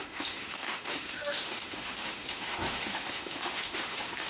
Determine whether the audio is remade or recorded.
remade